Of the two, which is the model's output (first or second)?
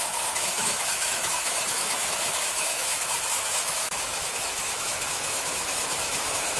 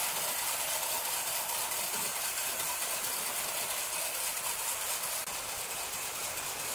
first